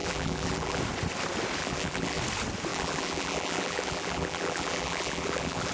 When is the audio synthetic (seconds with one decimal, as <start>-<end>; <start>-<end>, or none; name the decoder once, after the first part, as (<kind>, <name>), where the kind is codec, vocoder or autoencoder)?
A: 0.0-0.8 (vocoder, BigVGAN v2); 1.6-2.2; 2.7-5.7